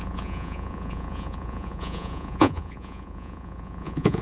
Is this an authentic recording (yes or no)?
no